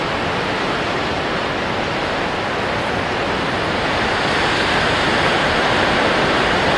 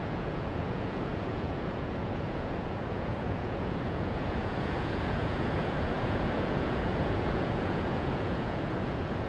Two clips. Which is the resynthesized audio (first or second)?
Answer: second